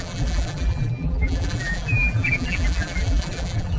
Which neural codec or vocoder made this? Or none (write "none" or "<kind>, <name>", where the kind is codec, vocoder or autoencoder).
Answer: vocoder, BigVGAN v2